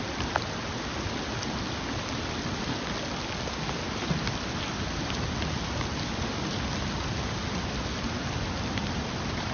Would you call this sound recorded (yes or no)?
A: yes